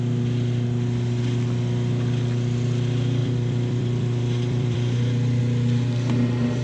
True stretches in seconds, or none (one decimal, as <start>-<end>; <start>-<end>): 0.0-3.2; 5.4-6.6